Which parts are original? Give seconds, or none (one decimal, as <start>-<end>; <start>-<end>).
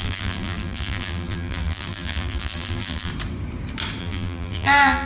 3.1-4.0